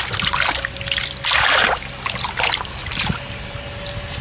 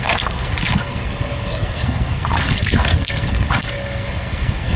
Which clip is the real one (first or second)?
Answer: first